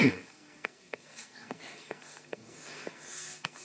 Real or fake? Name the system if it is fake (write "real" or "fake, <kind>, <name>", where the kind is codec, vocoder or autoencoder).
fake, codec, SNAC